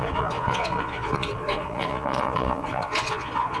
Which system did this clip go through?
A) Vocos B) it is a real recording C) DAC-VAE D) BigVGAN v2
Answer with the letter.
A